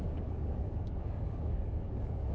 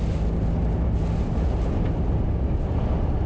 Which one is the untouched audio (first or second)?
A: second